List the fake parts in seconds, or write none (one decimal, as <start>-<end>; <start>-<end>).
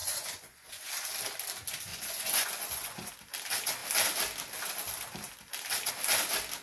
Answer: 0.0-0.9; 1.9-3.1